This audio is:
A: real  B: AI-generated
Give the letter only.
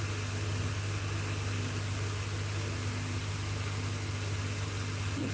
A